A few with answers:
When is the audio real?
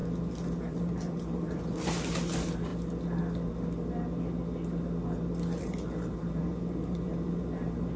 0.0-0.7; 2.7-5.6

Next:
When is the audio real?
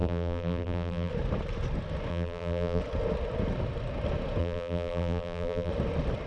1.1-2.1; 2.8-4.4; 5.7-6.3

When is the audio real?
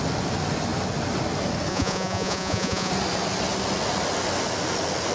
0.0-1.7; 2.9-5.1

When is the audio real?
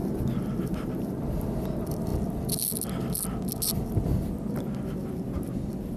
0.0-0.7; 2.1-6.0